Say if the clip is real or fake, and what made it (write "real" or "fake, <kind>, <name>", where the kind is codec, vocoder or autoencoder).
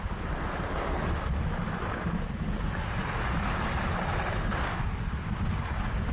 real